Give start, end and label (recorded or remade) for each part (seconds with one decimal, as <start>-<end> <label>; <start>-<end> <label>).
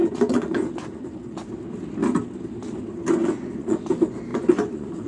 0.0-1.5 remade; 1.5-3.2 recorded; 3.2-3.8 remade; 3.8-4.3 recorded; 4.3-5.1 remade